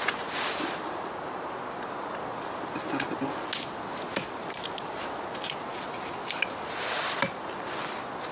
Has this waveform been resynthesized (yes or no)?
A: no